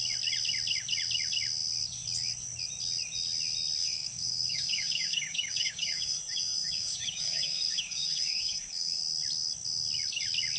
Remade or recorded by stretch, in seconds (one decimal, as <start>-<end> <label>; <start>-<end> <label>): 0.0-3.8 recorded; 3.8-9.0 remade; 9.0-10.6 recorded